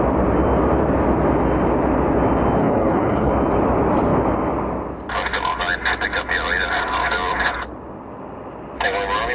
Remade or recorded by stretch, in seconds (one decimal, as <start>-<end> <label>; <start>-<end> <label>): 0.0-2.6 recorded; 2.6-3.3 remade; 3.3-9.3 recorded